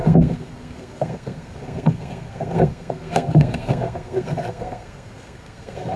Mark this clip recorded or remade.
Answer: remade